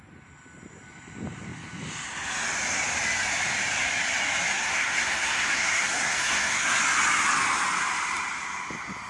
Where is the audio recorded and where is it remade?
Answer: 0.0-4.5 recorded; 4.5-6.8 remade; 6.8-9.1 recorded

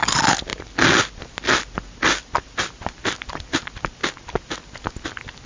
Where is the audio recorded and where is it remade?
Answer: 0.0-5.5 recorded